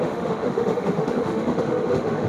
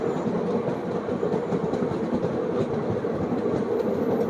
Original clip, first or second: second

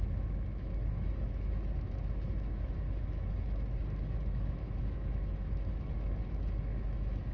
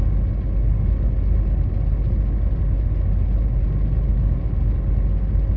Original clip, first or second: second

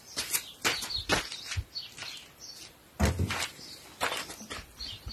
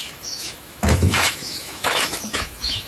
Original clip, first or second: first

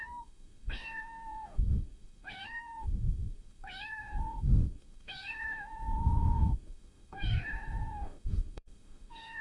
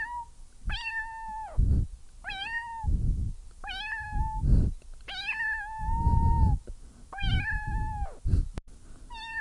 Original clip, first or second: second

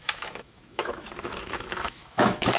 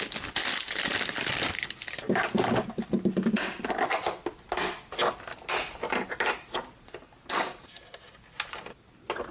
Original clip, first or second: second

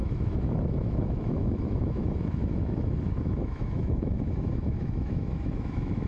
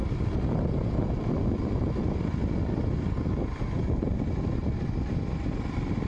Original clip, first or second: second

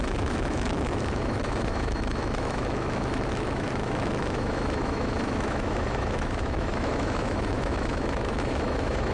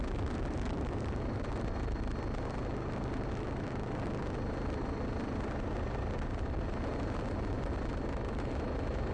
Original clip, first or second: second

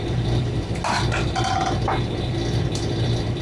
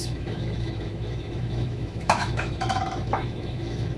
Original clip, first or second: first